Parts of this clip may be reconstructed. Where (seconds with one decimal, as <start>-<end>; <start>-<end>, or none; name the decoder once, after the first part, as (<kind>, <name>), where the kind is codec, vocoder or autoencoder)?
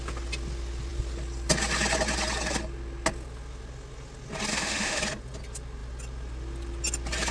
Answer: 4.5-5.0 (autoencoder, DAC-VAE)